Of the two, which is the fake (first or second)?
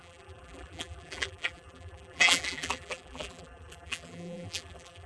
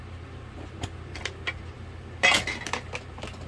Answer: first